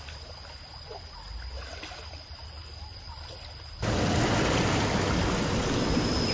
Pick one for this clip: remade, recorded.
recorded